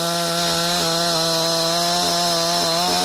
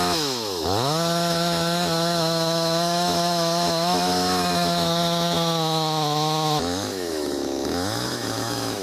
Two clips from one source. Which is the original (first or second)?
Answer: first